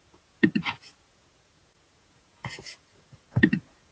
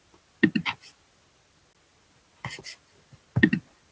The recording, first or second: second